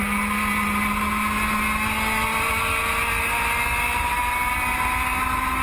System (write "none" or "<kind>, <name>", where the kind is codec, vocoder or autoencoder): none